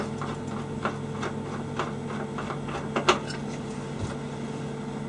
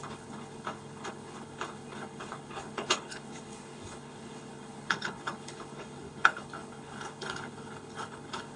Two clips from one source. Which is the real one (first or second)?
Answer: first